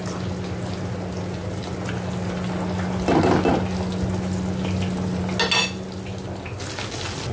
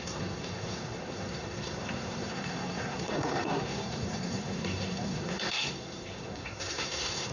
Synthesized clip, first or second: second